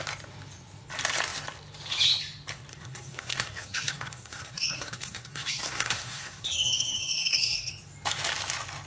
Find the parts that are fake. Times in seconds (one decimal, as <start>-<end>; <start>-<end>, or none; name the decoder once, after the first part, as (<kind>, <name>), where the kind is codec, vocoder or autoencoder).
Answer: 2.7-7.7 (codec, SNAC)